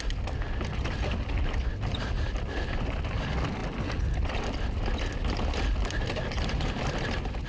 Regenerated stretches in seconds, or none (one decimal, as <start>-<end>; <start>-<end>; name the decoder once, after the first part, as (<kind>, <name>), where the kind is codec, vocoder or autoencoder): none